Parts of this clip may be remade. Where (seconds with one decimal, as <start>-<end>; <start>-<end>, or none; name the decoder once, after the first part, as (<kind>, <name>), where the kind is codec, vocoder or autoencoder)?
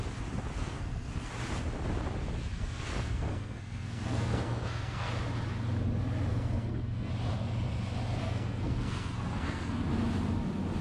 0.6-1.3 (codec, SNAC); 2.5-5.1; 6.3-7.1; 8.2-9.8